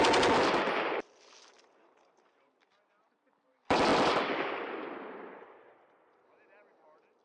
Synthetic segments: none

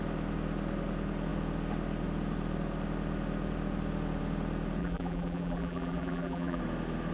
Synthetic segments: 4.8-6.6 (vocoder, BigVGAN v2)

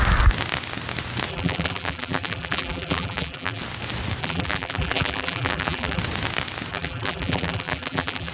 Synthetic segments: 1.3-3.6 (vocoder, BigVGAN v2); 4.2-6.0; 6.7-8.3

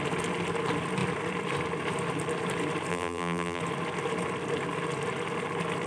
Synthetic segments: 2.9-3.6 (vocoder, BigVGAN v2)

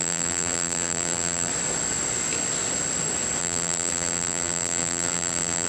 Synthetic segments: 0.0-1.5 (vocoder, BigVGAN v2); 3.4-5.7

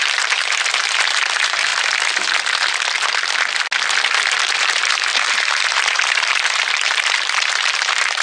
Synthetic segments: 0.0-1.7 (vocoder, BigVGAN v2); 4.6-8.2